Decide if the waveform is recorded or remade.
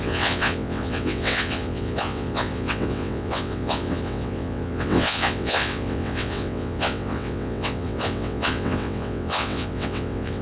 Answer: remade